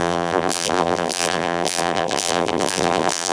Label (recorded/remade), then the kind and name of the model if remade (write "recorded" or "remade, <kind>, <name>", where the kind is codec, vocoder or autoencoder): remade, vocoder, BigVGAN v2